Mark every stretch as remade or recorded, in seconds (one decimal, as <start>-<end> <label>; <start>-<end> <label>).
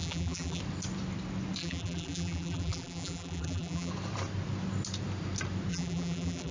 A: 0.0-0.6 remade; 0.6-1.6 recorded; 1.6-3.9 remade; 3.9-5.7 recorded; 5.7-6.5 remade